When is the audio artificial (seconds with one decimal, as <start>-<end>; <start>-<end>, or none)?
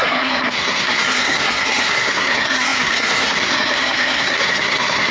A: 0.0-5.1